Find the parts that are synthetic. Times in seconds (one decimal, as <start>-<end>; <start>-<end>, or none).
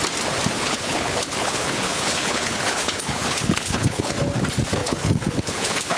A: 0.5-4.1; 4.8-6.0